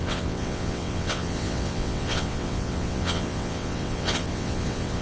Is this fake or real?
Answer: fake